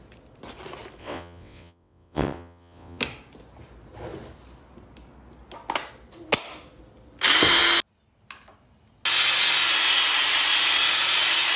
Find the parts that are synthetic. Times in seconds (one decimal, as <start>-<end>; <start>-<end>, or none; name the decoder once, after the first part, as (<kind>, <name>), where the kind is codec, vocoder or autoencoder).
1.0-3.0 (vocoder, WaveNeXt)